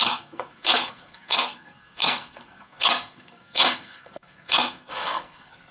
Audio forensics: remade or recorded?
remade